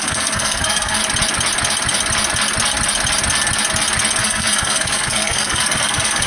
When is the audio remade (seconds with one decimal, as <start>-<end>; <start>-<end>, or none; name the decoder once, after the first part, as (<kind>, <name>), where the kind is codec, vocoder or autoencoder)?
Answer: 0.0-1.0 (codec, SNAC); 4.2-6.3